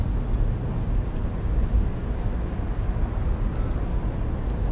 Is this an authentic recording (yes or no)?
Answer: yes